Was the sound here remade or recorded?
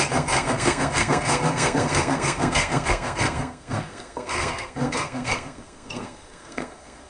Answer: remade